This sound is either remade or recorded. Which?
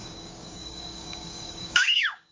remade